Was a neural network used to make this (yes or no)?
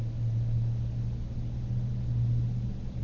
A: no